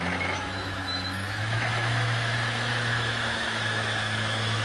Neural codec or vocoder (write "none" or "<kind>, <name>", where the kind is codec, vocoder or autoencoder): autoencoder, DAC-VAE